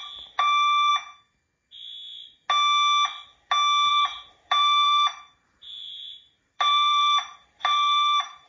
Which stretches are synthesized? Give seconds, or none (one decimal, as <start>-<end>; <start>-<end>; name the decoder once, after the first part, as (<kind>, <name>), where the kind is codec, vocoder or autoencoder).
0.0-0.9 (vocoder, BigVGAN v2); 3.9-8.5